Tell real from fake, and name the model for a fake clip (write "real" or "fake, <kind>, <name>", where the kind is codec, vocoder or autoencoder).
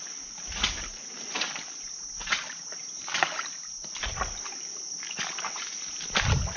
fake, vocoder, BigVGAN v2